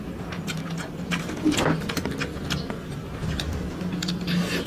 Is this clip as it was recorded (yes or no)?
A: yes